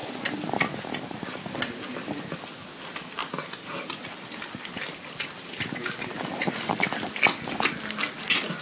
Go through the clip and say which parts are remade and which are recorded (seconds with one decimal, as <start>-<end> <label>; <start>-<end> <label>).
0.0-8.6 recorded